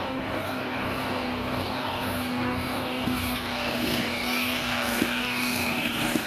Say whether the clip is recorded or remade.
remade